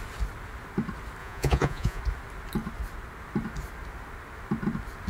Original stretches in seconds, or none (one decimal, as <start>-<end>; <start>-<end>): 0.0-1.2; 2.0-5.1